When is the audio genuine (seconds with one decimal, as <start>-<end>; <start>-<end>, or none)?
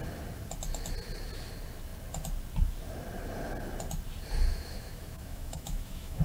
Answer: 0.0-4.5